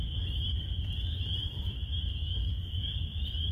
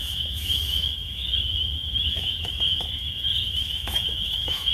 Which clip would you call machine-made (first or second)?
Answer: second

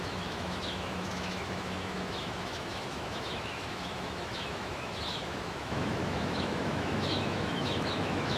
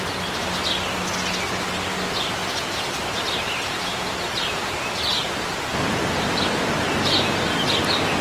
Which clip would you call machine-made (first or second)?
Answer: first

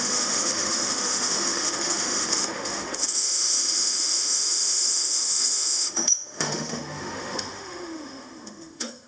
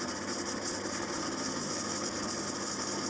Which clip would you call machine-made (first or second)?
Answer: first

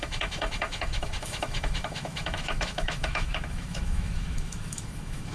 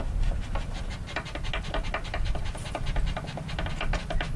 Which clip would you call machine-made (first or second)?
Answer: first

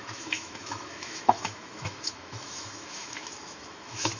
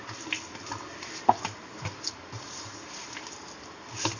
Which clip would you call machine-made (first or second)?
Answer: first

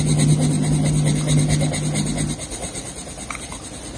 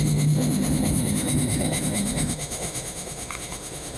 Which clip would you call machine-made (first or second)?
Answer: second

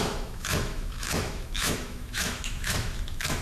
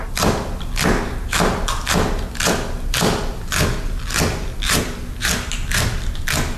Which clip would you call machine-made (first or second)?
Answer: first